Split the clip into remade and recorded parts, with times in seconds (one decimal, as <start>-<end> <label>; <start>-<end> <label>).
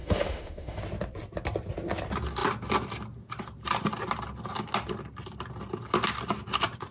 0.0-0.8 remade; 0.8-6.9 recorded